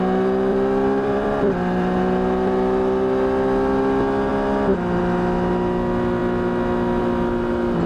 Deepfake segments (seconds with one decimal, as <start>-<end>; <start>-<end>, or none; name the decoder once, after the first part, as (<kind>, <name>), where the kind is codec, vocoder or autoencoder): 0.5-2.0 (vocoder, BigVGAN v2); 4.3-5.0